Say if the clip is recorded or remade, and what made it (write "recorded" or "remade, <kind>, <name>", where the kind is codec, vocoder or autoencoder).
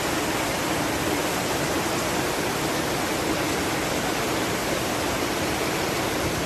recorded